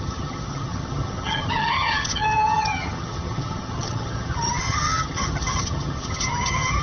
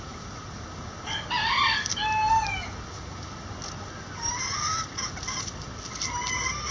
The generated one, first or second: first